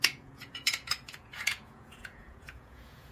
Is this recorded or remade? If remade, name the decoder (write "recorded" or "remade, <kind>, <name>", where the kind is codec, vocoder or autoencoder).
remade, vocoder, Vocos